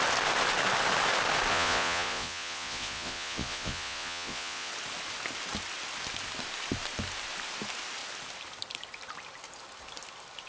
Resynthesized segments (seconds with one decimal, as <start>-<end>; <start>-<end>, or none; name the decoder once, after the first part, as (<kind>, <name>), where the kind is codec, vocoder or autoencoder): 1.5-4.7 (vocoder, Vocos)